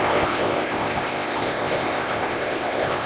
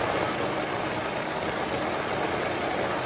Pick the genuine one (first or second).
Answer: second